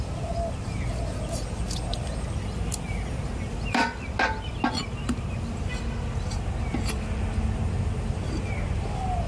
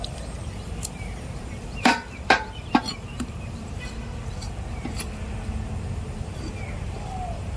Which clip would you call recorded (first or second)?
first